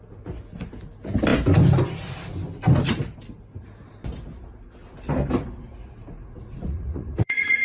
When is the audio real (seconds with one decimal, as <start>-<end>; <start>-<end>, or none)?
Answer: 0.0-5.8